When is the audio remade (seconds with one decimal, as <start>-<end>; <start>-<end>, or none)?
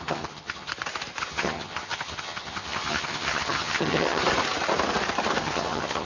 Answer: 0.0-0.7; 1.2-4.2; 5.4-6.1